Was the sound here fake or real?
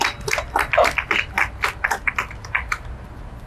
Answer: real